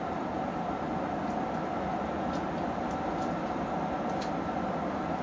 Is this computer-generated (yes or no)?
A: no